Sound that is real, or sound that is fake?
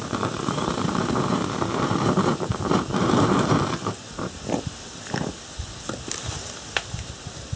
fake